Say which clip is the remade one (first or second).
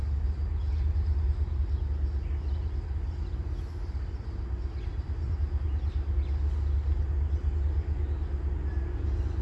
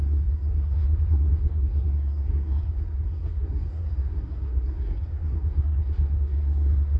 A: second